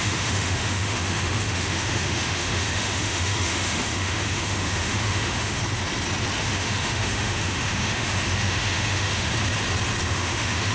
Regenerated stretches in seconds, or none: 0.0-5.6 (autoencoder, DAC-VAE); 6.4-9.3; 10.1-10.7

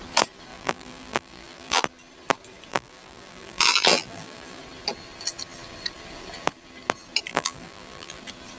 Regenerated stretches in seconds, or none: 0.5-1.8 (vocoder, BigVGAN v2); 2.7-4.6; 7.3-8.2

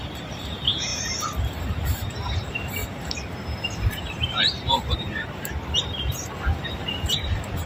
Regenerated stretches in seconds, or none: 0.0-2.8 (vocoder, BigVGAN v2); 3.6-7.7

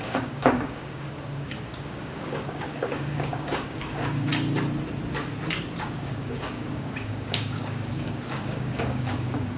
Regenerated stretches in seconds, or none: 0.0-4.3 (codec, DAC); 5.8-9.6